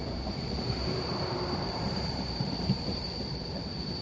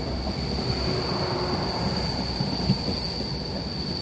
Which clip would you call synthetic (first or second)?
first